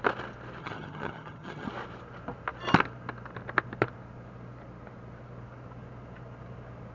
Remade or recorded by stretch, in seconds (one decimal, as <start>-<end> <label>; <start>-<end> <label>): 0.0-0.6 recorded; 0.6-1.7 remade; 1.7-6.9 recorded